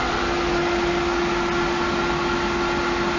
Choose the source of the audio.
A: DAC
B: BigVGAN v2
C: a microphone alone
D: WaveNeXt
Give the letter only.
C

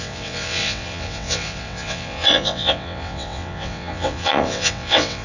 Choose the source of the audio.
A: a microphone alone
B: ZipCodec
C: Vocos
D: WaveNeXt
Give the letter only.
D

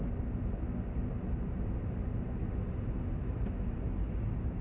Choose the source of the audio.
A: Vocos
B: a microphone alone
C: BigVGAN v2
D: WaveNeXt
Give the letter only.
B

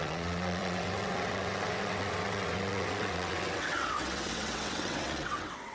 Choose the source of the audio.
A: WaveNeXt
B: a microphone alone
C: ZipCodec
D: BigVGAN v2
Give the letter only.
A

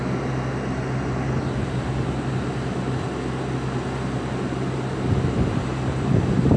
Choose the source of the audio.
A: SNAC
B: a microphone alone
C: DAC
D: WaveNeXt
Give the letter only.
B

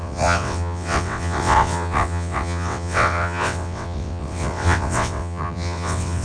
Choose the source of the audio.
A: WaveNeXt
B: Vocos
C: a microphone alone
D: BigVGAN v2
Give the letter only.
A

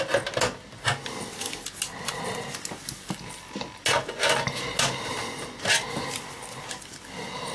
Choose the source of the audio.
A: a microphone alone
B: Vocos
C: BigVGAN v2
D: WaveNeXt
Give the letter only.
A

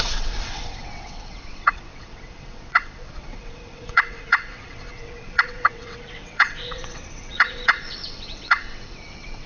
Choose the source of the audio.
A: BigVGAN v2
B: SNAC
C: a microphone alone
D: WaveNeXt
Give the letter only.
D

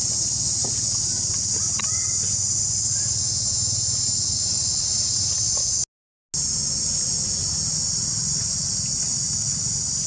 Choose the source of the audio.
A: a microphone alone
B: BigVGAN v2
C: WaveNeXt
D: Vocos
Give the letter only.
A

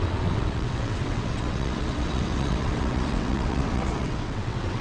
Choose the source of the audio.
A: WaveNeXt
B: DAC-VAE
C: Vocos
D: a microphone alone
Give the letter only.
A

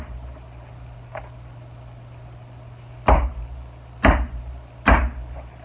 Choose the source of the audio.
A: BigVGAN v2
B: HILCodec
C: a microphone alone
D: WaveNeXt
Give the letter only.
C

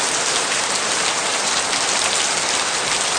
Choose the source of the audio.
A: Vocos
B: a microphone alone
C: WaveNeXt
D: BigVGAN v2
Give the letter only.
B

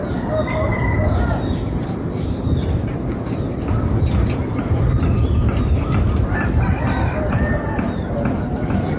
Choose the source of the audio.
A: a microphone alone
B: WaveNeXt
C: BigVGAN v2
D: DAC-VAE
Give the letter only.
A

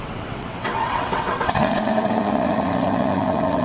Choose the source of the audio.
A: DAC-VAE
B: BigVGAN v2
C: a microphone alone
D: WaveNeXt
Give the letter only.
D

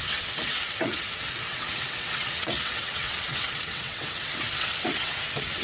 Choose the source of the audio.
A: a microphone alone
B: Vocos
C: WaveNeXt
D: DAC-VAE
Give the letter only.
C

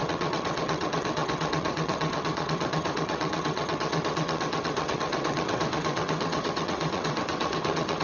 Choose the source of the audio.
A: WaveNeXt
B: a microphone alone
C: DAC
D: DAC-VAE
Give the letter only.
A